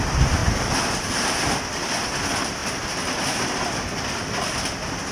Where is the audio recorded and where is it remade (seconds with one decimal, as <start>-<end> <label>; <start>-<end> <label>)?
0.0-5.1 recorded